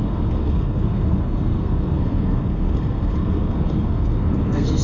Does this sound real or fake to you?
fake